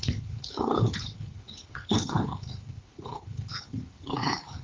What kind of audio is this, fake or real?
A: fake